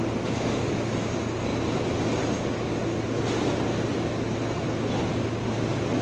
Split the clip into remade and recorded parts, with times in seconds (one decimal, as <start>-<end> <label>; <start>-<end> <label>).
0.0-6.0 recorded